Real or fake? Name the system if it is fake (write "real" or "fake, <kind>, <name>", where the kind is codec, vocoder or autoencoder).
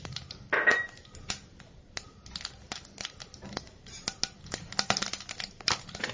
real